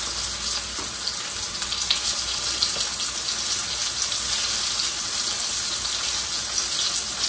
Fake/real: real